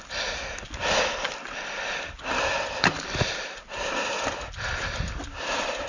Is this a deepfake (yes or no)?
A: no